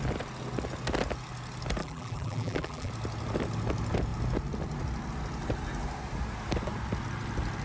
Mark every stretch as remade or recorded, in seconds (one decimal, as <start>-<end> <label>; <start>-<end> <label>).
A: 0.0-1.8 recorded; 1.8-2.9 remade; 2.9-7.6 recorded